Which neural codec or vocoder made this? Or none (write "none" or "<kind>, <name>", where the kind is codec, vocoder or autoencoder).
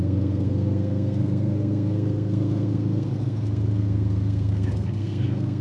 codec, SNAC